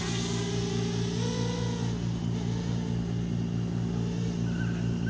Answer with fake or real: real